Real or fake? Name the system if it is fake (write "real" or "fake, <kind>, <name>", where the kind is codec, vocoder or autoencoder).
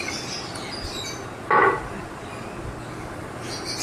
real